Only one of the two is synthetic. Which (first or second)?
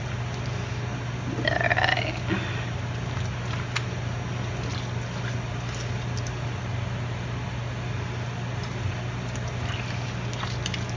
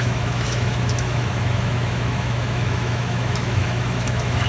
second